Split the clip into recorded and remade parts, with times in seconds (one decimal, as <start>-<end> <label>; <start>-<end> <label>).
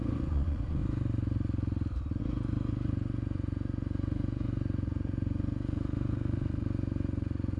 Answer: 0.0-0.8 remade; 0.8-2.2 recorded; 2.2-7.6 remade